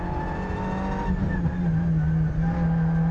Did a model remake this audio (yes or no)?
no